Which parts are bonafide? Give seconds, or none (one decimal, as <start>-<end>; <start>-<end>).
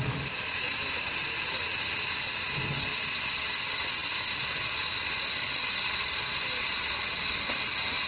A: 0.0-8.1